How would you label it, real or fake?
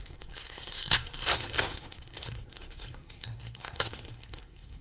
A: fake